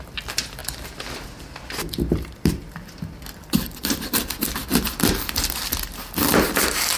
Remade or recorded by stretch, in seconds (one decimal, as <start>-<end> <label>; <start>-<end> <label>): 0.0-7.0 recorded